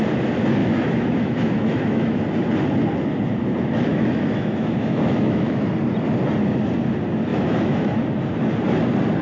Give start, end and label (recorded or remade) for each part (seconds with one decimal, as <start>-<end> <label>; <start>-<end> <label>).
0.0-0.6 recorded; 0.6-2.2 remade; 2.2-3.9 recorded; 3.9-5.7 remade; 5.7-7.3 recorded; 7.3-8.0 remade; 8.0-9.2 recorded